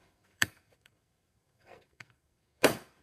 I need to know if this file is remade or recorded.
remade